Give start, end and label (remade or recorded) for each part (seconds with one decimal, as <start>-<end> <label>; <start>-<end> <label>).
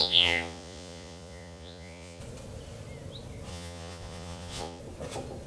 0.0-2.2 remade; 2.2-3.5 recorded; 3.5-4.8 remade; 4.8-5.5 recorded